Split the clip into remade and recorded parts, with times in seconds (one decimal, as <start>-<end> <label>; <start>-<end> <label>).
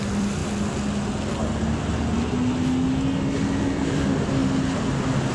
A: 0.0-5.3 recorded